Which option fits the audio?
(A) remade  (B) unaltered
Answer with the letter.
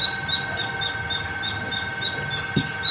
B